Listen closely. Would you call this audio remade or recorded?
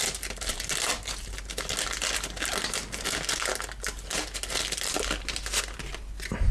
recorded